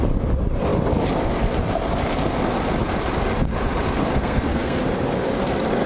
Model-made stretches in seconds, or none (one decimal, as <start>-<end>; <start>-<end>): 4.1-4.8